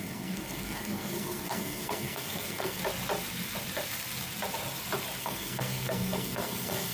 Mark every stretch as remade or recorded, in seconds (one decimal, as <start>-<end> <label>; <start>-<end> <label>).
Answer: 0.0-2.8 remade; 2.8-5.2 recorded; 5.2-6.9 remade